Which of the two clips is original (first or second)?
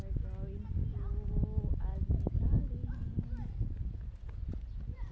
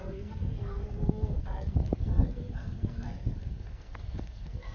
first